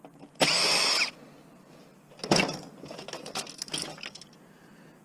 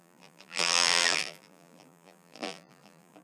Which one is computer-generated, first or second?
second